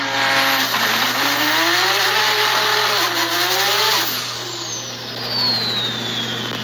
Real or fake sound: real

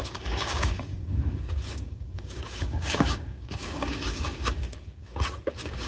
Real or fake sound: fake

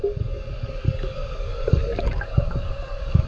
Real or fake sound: fake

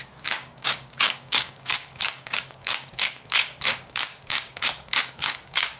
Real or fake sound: fake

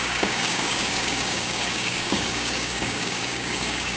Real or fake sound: fake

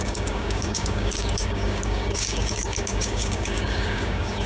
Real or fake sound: fake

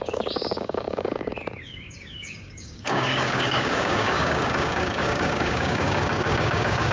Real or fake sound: fake